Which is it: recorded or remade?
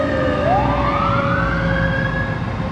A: recorded